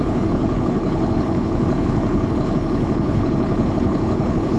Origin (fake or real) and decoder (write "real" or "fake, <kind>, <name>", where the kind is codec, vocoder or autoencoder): fake, codec, HILCodec